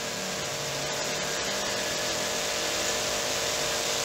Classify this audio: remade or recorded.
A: recorded